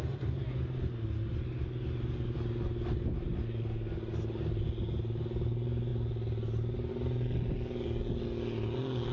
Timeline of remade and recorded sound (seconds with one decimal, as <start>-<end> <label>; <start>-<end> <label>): 0.0-9.1 recorded